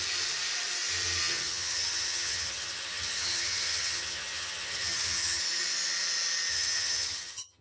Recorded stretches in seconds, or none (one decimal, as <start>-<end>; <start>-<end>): 0.0-1.2; 5.4-6.5